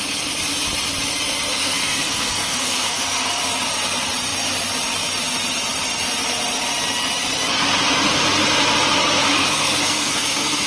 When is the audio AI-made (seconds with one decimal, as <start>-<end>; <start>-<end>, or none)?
1.5-3.4; 9.2-10.7